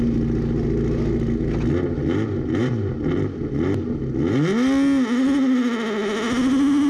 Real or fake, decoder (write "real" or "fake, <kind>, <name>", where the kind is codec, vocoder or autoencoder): real